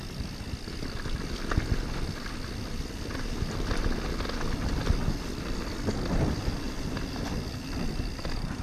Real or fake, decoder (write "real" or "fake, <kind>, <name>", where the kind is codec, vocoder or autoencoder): real